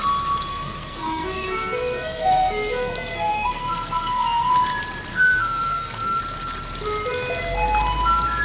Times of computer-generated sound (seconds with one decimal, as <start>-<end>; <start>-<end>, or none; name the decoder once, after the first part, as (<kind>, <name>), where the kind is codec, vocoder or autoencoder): 0.5-4.5 (codec, SNAC); 5.1-6.2